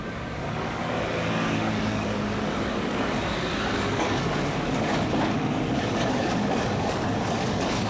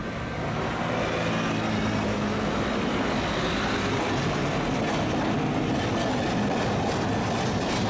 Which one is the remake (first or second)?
first